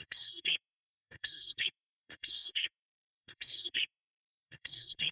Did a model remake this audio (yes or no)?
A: yes